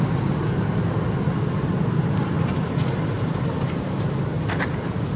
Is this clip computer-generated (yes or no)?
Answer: no